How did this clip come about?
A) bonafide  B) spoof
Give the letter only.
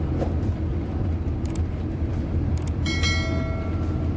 A